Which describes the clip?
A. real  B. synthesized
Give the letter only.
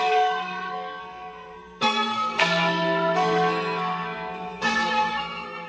B